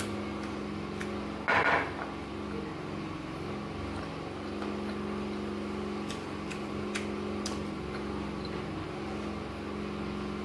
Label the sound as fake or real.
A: real